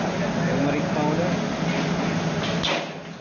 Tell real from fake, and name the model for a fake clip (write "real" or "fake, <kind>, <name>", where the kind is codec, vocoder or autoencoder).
real